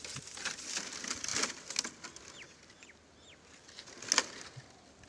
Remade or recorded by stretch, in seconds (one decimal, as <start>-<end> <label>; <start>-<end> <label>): 0.0-5.1 recorded